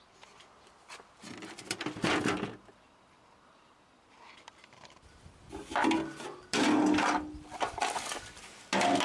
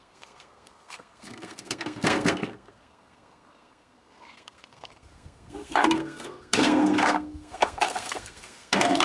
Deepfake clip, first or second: second